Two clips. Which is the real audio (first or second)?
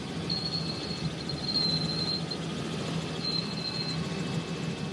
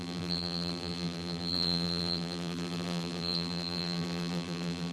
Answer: first